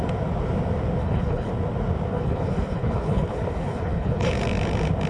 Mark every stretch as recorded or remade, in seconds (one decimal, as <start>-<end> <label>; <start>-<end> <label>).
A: 0.0-1.0 recorded; 1.0-1.5 remade; 1.5-2.1 recorded; 2.1-4.3 remade; 4.3-5.1 recorded